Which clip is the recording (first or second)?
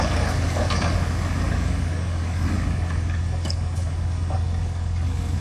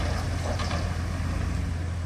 second